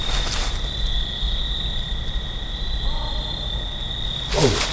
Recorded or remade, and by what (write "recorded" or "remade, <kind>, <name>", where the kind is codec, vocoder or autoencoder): recorded